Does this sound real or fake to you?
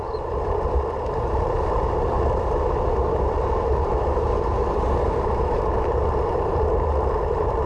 fake